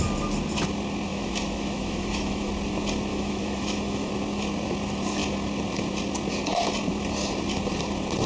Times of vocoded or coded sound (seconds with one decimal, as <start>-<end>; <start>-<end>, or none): 1.1-2.5; 3.1-4.1